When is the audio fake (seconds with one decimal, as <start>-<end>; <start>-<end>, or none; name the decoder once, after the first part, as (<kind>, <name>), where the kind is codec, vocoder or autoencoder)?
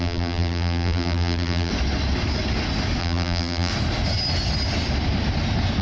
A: 0.0-1.7 (vocoder, BigVGAN v2); 3.0-3.7